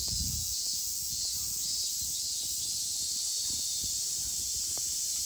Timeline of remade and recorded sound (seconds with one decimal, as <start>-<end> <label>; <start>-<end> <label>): 0.0-1.2 remade; 1.2-5.3 recorded